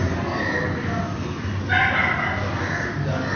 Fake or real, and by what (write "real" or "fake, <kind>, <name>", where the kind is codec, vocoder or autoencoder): real